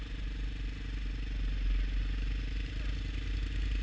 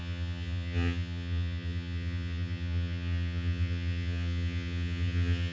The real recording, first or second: first